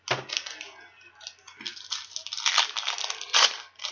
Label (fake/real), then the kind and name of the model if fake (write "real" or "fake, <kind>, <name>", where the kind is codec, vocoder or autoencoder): real